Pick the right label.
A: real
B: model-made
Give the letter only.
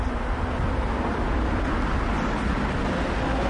A